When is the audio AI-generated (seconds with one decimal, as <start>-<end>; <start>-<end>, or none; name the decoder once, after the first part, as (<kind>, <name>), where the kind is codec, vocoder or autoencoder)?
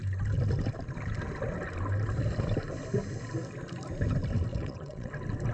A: 4.5-5.1 (vocoder, WaveNeXt)